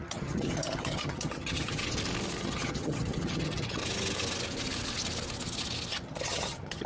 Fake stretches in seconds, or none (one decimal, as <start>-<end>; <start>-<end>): 0.0-1.8; 2.4-3.8; 5.9-6.9